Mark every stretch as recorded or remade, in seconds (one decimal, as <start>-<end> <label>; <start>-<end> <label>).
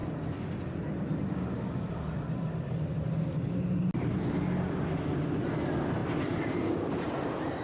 0.0-7.6 recorded